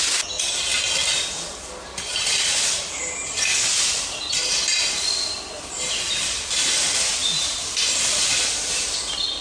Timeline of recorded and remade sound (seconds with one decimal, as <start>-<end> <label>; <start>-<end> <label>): 0.0-9.4 recorded